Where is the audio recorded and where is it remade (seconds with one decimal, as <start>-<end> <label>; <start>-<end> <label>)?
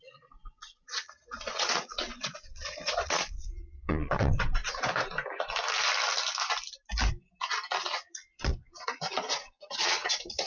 0.0-4.6 remade; 4.6-7.8 recorded; 7.8-10.5 remade